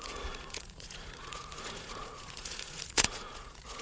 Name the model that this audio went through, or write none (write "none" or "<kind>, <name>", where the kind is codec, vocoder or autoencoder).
vocoder, Vocos